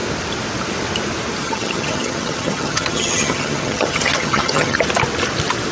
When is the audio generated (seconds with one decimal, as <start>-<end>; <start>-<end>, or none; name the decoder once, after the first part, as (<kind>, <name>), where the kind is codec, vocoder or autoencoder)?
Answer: 1.4-4.8 (vocoder, HiFi-GAN)